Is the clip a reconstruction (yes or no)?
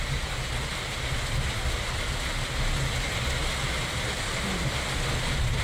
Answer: no